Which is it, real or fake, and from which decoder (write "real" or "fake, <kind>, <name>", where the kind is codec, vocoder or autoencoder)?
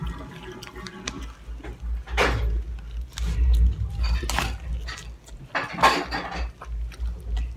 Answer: real